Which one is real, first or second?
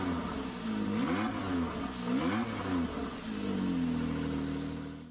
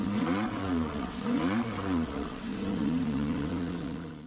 first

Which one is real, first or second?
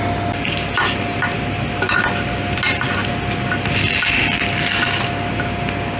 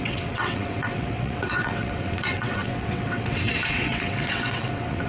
first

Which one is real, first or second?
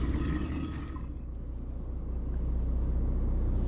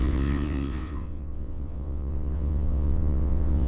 first